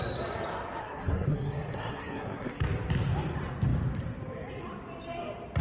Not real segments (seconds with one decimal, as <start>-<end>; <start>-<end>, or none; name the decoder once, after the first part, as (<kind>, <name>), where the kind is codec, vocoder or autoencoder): 0.8-2.6 (codec, SNAC)